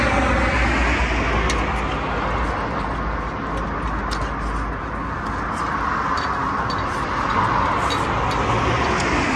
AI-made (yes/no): no